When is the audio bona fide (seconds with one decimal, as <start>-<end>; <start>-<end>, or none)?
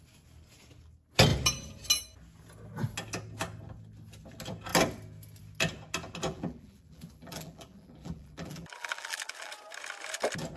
0.0-6.3; 9.5-10.6